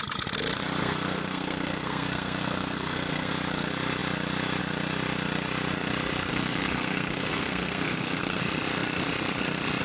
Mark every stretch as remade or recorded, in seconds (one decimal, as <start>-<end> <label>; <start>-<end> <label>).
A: 0.0-0.8 recorded; 0.8-3.3 remade; 3.3-6.3 recorded; 6.3-8.4 remade; 8.4-9.8 recorded